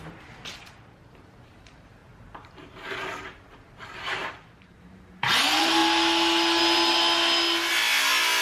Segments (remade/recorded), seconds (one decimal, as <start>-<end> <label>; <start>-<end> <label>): 0.0-5.8 remade; 5.8-8.4 recorded